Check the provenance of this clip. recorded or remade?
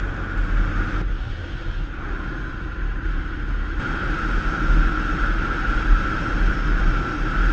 recorded